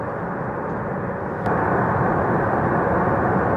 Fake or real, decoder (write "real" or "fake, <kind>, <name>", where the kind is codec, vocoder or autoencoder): real